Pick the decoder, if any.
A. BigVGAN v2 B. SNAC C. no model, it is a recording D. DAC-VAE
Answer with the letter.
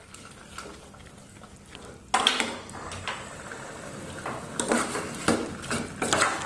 C